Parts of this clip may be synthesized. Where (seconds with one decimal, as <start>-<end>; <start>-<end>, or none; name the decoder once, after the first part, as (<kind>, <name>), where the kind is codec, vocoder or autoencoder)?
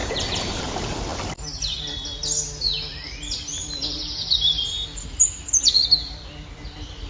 0.0-0.6 (vocoder, BigVGAN v2)